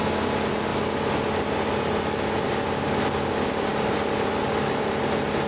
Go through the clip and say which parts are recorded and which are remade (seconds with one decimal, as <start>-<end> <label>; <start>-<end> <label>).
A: 0.0-5.5 recorded